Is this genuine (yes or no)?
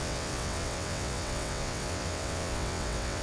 no